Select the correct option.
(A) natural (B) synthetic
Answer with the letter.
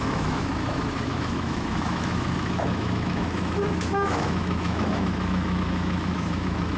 B